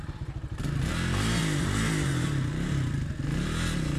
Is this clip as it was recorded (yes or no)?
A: yes